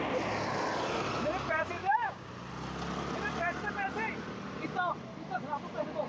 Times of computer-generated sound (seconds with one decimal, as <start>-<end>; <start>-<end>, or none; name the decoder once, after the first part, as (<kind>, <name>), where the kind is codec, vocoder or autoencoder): 1.8-2.3 (codec, DAC)